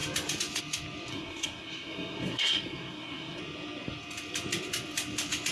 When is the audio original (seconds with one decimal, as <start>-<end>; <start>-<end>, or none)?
0.0-1.1; 3.4-5.5